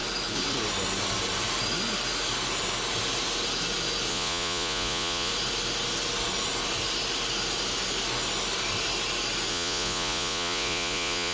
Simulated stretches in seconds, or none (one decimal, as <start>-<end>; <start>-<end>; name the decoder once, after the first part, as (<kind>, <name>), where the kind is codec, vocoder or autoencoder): 4.1-5.3 (vocoder, Vocos); 9.5-11.3